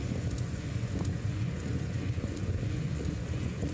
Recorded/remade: remade